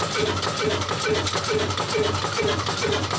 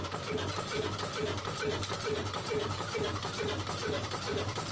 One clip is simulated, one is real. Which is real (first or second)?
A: first